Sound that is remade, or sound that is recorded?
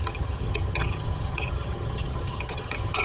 remade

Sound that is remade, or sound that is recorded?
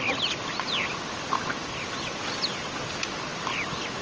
recorded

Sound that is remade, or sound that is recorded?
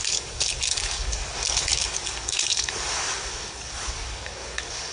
remade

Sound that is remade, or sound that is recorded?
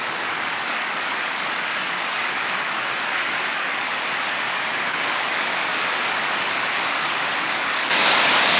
remade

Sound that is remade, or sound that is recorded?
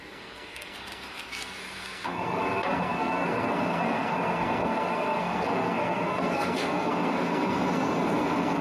remade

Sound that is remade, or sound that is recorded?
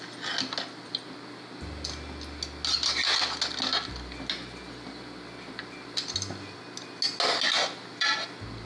recorded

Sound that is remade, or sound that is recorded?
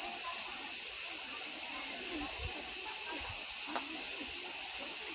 recorded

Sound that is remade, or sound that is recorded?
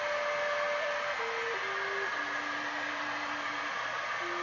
recorded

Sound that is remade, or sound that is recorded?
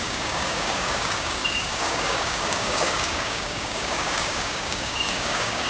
remade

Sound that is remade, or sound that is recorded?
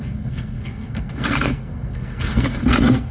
remade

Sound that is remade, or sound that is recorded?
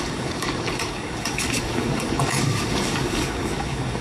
remade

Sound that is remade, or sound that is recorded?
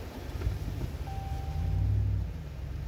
recorded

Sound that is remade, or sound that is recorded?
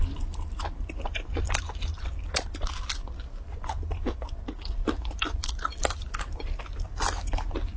recorded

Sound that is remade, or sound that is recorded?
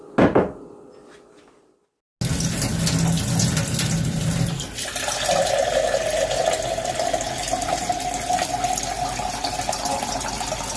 recorded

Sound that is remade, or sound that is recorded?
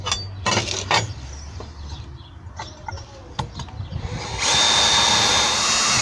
recorded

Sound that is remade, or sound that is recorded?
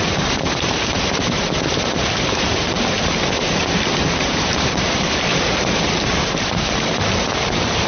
remade